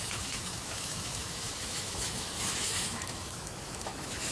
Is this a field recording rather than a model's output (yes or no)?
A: no